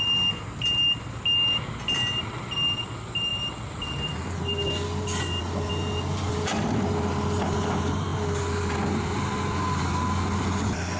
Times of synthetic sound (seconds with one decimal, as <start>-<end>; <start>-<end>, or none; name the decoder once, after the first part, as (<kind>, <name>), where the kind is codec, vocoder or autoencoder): none